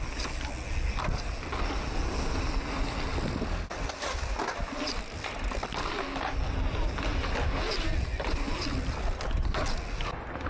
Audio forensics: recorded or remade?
recorded